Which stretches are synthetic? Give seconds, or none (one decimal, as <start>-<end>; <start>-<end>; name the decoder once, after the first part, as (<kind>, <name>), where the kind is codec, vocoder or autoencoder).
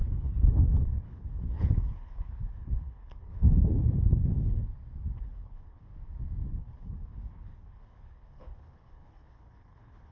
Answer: 0.0-4.6 (codec, HILCodec); 5.2-5.9; 6.5-10.1